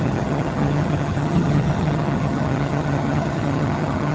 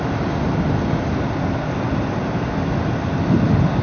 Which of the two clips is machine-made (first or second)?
first